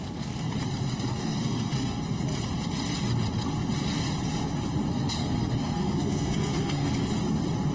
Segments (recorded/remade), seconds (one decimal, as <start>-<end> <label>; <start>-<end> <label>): 0.0-1.1 recorded; 1.1-2.0 remade; 2.0-4.9 recorded; 4.9-6.9 remade; 6.9-7.7 recorded